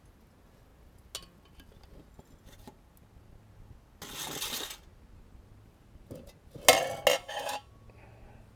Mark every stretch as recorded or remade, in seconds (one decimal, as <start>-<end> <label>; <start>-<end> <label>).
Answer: 0.0-7.1 recorded; 7.1-7.7 remade; 7.7-8.6 recorded